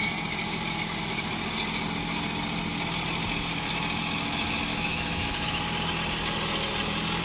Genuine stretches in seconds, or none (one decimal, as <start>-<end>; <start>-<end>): 0.0-4.7; 5.6-7.2